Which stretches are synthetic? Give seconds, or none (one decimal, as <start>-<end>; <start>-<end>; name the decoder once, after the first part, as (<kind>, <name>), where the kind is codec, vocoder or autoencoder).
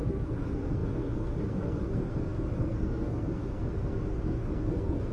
0.0-5.1 (codec, SNAC)